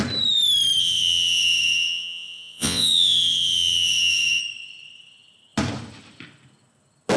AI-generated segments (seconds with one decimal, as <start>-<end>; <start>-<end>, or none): 0.8-4.4